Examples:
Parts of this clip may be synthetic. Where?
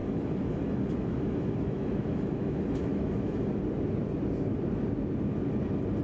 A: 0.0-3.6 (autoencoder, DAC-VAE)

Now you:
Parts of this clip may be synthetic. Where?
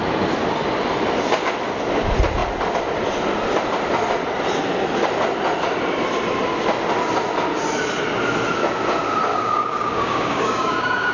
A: 9.3-11.1 (codec, DAC)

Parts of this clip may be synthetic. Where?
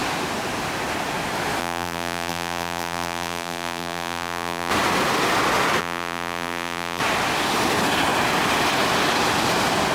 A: 1.6-4.7 (vocoder, BigVGAN v2); 5.8-7.0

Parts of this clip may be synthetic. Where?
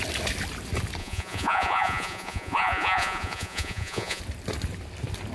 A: 1.0-4.2 (vocoder, Vocos)